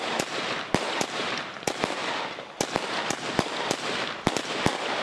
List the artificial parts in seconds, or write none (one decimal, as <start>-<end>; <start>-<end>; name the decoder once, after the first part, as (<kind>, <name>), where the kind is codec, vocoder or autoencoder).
none